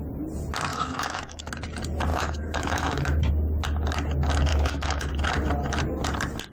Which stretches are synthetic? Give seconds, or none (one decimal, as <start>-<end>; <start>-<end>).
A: 0.7-1.5; 2.1-3.3; 4.5-5.1